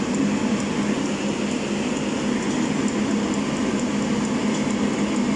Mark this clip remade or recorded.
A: recorded